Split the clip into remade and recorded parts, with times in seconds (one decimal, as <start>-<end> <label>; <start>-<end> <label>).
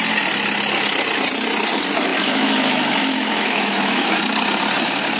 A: 0.0-2.1 recorded; 2.1-4.2 remade; 4.2-5.2 recorded